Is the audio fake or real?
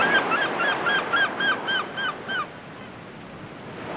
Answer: real